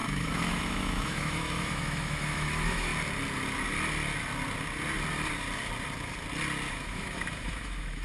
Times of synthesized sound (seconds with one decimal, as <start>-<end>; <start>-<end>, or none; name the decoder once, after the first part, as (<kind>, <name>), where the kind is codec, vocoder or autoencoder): 0.0-2.9 (autoencoder, DAC-VAE); 6.7-8.0